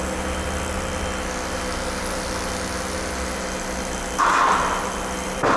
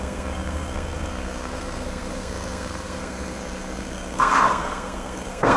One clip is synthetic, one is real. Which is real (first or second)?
first